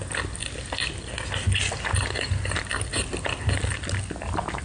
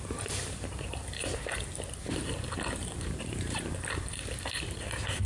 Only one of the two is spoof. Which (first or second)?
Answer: second